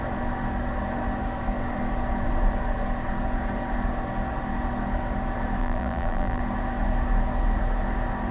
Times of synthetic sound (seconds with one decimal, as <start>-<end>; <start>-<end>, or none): 5.6-6.4